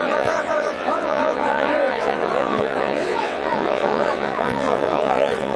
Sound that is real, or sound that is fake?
fake